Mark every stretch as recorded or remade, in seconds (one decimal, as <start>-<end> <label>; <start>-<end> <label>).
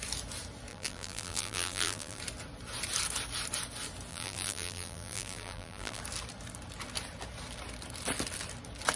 0.0-0.7 recorded; 0.7-2.2 remade; 2.2-4.1 recorded; 4.1-6.0 remade; 6.0-9.0 recorded